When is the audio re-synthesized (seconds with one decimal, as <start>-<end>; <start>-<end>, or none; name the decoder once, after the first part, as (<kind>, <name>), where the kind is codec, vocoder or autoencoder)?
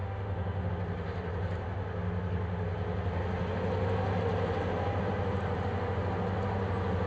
0.0-0.7 (autoencoder, DAC-VAE)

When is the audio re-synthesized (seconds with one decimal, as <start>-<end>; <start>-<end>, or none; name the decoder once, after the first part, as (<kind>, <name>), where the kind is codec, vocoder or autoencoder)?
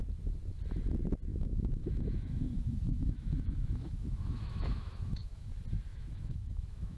1.3-5.5 (autoencoder, DAC-VAE); 5.9-7.0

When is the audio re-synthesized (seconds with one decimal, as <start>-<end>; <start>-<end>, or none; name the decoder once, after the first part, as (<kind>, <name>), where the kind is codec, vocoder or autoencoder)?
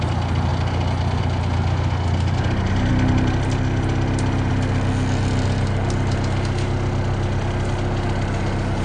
none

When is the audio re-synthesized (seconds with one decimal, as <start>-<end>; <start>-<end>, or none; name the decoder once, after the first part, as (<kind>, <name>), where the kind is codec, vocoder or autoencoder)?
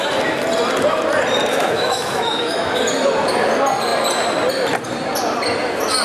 1.5-2.8 (autoencoder, DAC-VAE)